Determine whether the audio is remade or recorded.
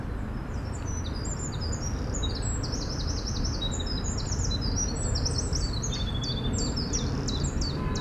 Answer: recorded